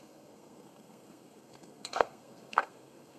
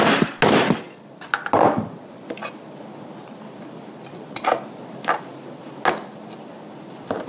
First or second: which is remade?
first